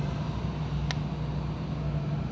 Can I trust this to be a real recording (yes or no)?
yes